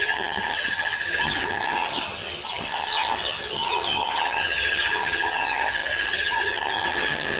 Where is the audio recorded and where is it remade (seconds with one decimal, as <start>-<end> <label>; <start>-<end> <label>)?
0.0-7.4 remade